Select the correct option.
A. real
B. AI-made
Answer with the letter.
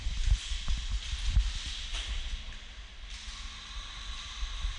A